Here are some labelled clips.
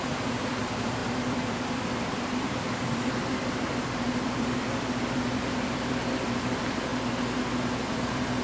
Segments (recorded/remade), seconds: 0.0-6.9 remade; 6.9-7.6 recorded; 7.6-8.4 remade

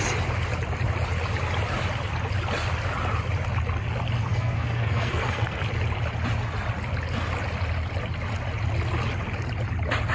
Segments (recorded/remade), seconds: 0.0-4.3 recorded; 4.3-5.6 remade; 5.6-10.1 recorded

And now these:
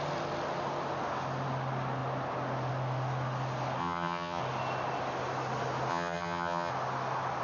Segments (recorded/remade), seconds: 0.0-3.8 recorded; 3.8-4.4 remade; 4.4-5.9 recorded; 5.9-6.7 remade; 6.7-7.4 recorded

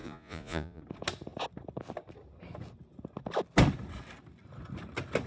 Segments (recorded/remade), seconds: 0.0-0.8 remade; 0.8-5.3 recorded